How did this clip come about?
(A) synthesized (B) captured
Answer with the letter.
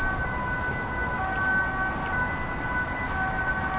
B